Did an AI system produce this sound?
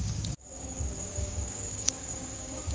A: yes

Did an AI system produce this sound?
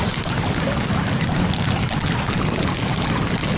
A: no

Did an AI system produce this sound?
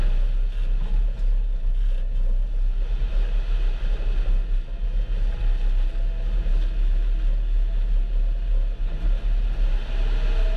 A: no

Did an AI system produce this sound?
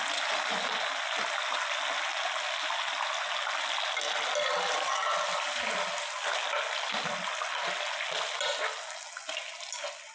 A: no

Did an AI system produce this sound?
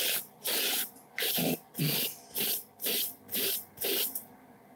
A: yes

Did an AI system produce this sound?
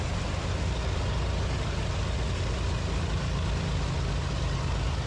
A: no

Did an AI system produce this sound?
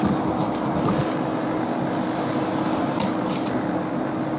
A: no